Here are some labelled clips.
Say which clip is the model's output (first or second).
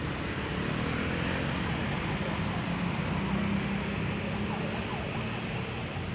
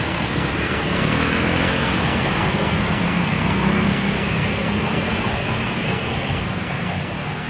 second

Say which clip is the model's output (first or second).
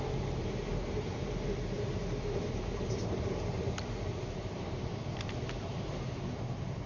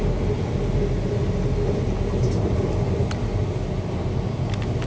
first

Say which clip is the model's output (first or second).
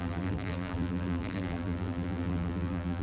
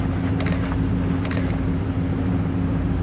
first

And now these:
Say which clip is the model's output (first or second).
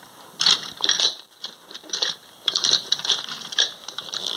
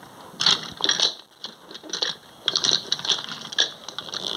first